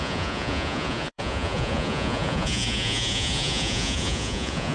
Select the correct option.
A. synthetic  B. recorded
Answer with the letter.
A